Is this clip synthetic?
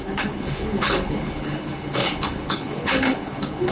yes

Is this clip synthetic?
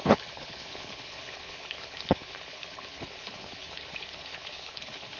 yes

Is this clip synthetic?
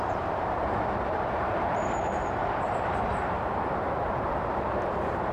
yes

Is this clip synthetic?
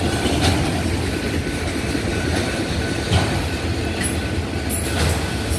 no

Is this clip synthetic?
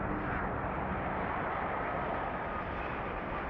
no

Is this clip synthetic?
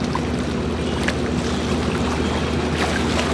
no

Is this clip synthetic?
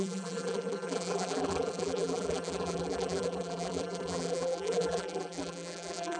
yes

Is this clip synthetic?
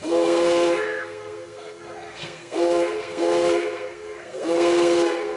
yes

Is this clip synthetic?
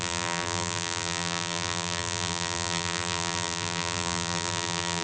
yes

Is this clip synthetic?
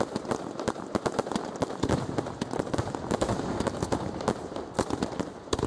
no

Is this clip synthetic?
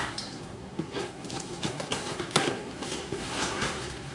yes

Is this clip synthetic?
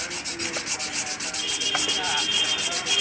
no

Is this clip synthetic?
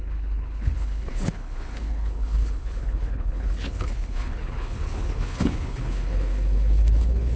yes